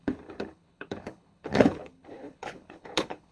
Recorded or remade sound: remade